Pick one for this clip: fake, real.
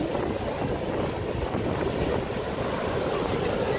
real